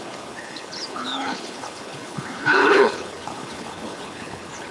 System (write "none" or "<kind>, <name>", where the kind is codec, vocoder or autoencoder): codec, HILCodec